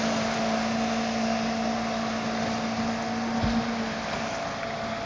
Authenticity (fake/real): real